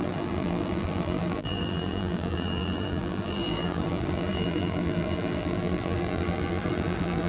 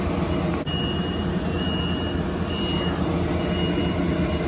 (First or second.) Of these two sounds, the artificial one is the first